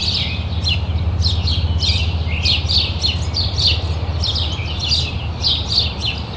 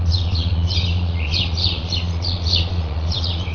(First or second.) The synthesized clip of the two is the second